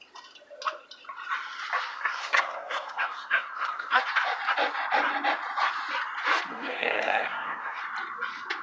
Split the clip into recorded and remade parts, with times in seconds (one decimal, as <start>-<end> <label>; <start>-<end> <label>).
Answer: 0.0-1.9 recorded; 1.9-4.0 remade; 4.0-6.5 recorded; 6.5-7.8 remade; 7.8-8.6 recorded